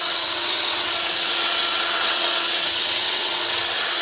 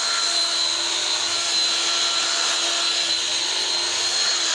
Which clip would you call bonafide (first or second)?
second